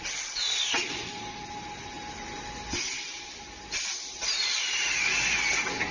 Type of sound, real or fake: real